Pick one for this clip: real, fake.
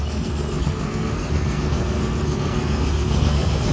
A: fake